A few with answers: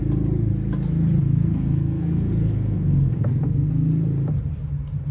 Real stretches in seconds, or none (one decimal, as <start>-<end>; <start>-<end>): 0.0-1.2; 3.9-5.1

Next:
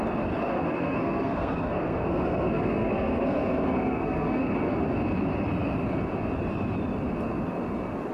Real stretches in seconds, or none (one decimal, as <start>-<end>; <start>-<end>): 0.0-0.5; 4.5-8.1

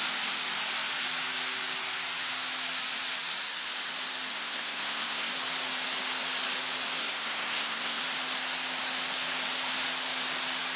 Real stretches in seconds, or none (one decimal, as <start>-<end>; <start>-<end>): 0.0-4.3; 5.3-7.0; 8.0-10.8

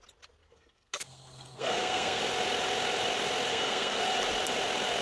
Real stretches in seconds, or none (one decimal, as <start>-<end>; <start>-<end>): 0.0-0.4; 2.2-3.5; 4.0-5.0

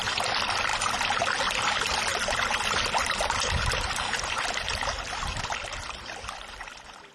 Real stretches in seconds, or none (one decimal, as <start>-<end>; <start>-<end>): 0.0-7.1

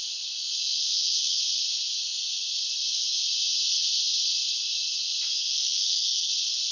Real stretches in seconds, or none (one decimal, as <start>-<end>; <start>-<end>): 0.0-0.4; 1.4-5.4; 6.3-6.7